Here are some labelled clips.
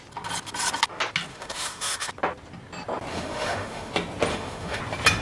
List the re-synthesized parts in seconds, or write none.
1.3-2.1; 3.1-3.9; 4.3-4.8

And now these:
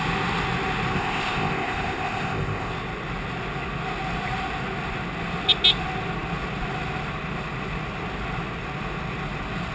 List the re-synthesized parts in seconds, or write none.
0.9-2.7

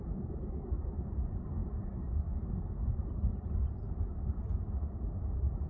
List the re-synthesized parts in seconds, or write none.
none

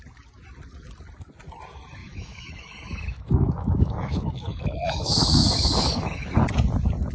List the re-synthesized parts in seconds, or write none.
2.0-6.3

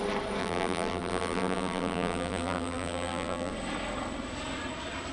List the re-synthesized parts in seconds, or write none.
0.4-3.5

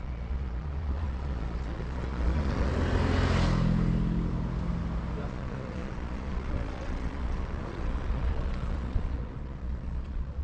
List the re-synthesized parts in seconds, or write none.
0.0-2.7; 5.3-10.4